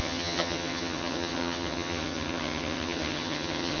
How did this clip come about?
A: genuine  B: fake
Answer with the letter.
B